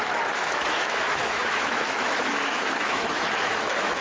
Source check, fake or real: fake